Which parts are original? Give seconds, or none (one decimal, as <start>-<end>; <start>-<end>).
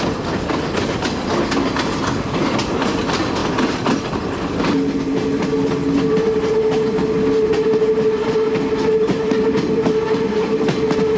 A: 0.0-11.2